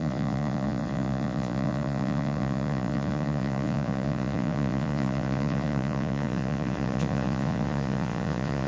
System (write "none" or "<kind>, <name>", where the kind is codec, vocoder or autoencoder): vocoder, Vocos